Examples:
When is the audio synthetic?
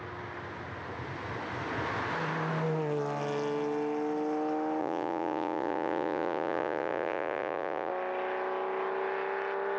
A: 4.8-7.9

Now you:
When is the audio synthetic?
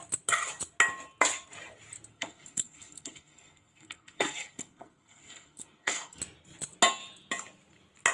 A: 2.1-6.2